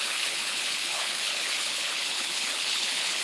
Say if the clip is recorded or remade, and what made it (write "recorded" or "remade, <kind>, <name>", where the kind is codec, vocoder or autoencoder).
remade, codec, HILCodec